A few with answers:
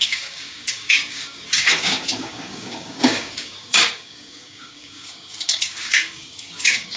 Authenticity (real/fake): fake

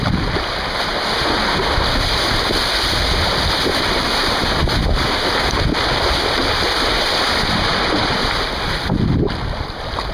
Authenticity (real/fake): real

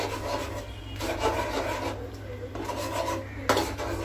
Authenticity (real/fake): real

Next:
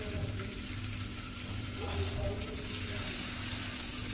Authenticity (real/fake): real